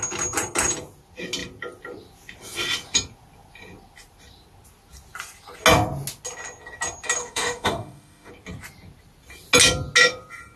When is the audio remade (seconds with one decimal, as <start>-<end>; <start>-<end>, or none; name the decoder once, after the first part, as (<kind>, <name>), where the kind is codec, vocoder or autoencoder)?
7.2-8.3 (autoencoder, DAC-VAE)